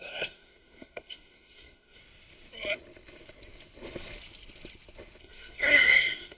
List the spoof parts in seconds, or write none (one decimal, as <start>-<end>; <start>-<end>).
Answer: 0.0-2.0; 5.2-6.4

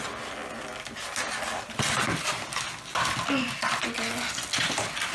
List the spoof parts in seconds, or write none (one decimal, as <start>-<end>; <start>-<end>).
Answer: none

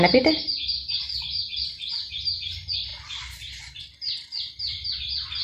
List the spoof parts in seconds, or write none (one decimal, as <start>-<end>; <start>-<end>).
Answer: none

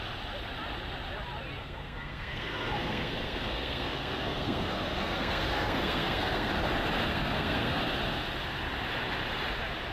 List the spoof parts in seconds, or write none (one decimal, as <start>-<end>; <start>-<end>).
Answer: 1.6-6.5; 7.1-7.8

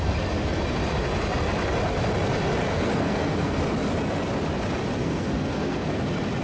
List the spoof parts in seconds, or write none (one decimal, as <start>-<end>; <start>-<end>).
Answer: 2.7-3.6; 5.0-6.0

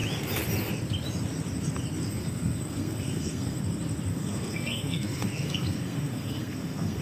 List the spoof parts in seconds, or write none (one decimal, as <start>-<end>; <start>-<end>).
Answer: 2.1-3.6; 4.1-7.0